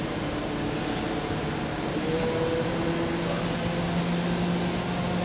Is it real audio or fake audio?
real